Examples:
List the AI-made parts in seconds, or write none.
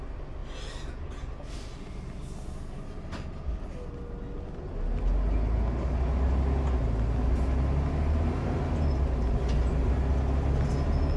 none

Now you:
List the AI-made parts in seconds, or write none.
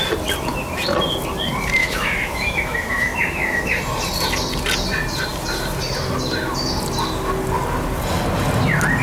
1.8-3.8 (autoencoder, DAC-VAE)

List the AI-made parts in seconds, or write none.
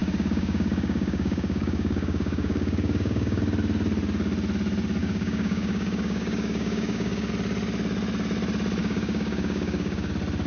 0.0-3.4 (codec, DAC); 5.0-7.3; 8.8-10.1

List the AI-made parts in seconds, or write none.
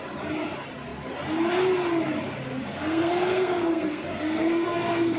2.7-5.2 (codec, SNAC)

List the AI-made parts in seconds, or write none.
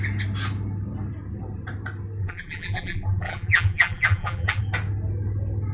2.2-4.6 (vocoder, BigVGAN v2)